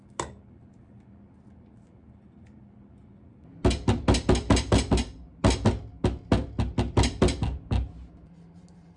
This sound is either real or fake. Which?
real